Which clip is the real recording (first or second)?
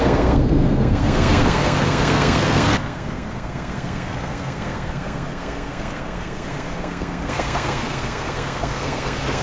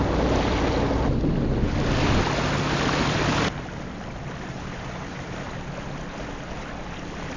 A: second